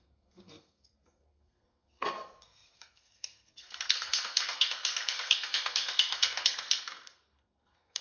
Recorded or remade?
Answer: remade